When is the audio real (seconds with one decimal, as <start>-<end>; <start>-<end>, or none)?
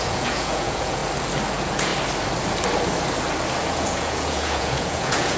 1.0-1.5; 1.9-3.7